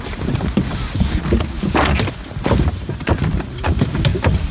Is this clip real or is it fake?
real